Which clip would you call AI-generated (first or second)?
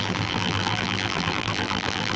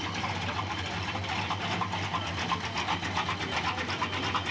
first